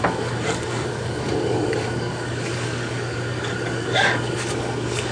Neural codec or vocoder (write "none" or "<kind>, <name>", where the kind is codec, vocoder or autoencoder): codec, DAC